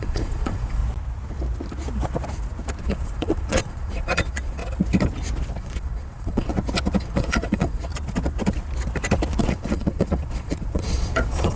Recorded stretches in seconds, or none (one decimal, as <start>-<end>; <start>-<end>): 0.8-2.8; 4.6-5.6; 6.5-7.0; 7.9-9.4